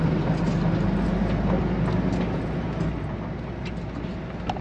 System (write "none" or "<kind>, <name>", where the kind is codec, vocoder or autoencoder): none